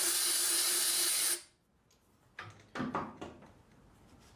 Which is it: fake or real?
real